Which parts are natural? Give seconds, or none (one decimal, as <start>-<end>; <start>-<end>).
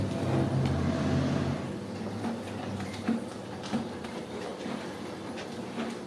0.0-6.1